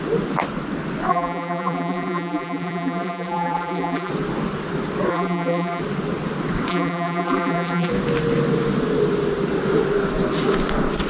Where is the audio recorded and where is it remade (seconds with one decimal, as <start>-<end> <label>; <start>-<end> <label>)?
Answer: 0.0-1.1 recorded; 1.1-4.1 remade; 4.1-5.1 recorded; 5.1-5.8 remade; 5.8-6.7 recorded; 6.7-7.9 remade; 7.9-11.1 recorded